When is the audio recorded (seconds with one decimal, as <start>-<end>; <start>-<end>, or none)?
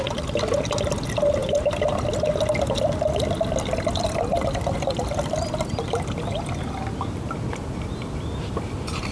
0.0-9.1